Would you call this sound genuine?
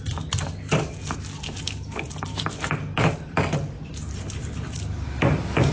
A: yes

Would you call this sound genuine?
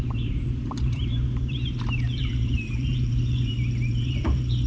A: no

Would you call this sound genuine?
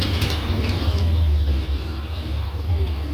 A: no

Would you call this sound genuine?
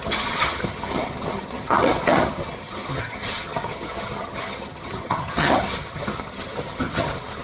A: no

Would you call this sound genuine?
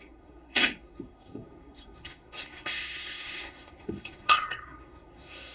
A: no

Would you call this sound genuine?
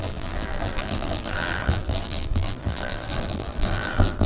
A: no